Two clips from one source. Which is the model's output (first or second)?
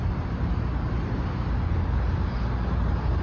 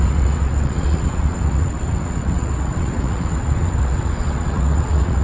second